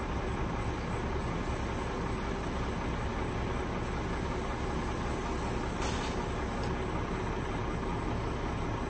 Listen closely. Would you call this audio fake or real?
real